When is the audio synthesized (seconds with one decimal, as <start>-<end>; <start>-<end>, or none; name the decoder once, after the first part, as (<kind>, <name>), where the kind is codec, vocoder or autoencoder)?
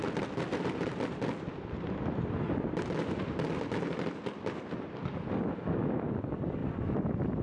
0.5-4.3 (vocoder, BigVGAN v2)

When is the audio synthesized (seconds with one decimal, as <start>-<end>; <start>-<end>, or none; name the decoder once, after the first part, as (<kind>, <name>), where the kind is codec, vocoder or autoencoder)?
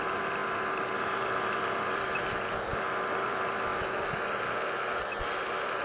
0.0-3.7 (vocoder, BigVGAN v2)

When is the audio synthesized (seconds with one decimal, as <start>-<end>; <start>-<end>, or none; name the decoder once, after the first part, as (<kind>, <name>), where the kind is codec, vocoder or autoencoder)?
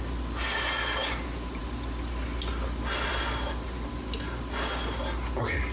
none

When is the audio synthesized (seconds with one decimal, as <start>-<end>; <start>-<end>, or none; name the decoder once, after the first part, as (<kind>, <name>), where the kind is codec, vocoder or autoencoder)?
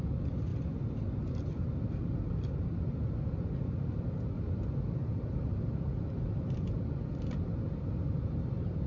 5.0-8.5 (vocoder, BigVGAN v2)